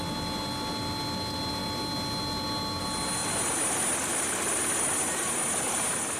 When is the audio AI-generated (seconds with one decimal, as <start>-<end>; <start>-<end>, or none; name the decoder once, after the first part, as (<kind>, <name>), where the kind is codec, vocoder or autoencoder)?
none